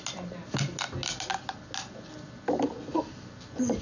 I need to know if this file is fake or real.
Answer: real